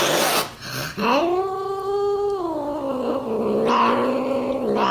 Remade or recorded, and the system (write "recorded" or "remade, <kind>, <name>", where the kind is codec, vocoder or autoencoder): recorded